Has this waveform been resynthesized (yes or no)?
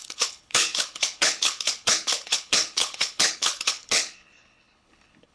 yes